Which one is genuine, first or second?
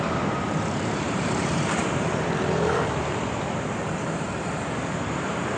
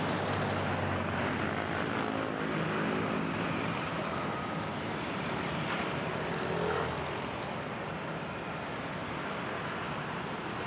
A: second